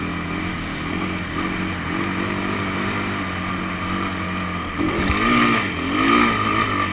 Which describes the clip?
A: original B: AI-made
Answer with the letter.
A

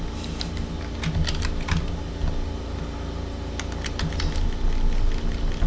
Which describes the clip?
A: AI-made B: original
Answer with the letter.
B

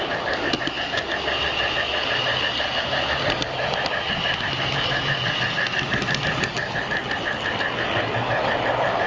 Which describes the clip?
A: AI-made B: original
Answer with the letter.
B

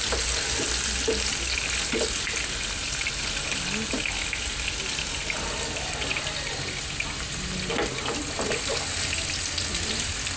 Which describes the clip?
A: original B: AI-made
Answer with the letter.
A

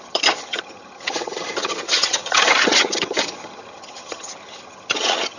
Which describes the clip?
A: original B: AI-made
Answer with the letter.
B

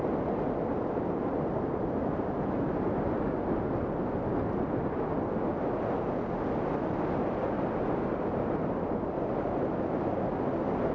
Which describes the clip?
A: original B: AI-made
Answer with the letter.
A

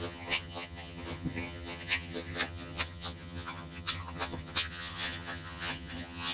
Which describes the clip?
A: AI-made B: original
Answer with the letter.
A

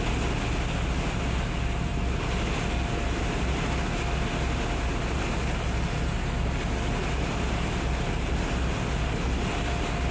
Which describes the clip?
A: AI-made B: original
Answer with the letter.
B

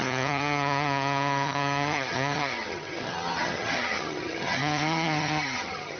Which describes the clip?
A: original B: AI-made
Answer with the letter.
B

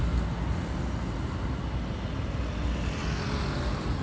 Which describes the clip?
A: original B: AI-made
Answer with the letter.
A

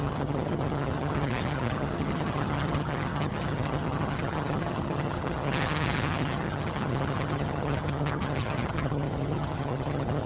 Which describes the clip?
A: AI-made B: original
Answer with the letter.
A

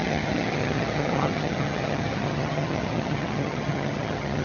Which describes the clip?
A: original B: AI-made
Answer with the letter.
B